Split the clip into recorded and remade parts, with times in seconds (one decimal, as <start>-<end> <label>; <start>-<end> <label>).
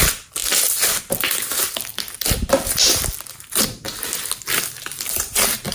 0.0-5.7 recorded